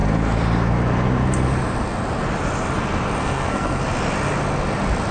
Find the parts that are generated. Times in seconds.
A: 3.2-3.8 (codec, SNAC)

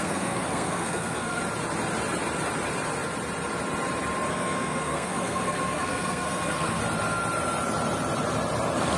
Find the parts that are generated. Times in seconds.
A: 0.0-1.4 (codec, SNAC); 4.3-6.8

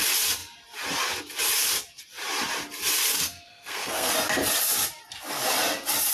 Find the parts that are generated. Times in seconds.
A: 3.1-4.1 (codec, SNAC)